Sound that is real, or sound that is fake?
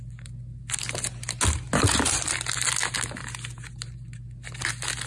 real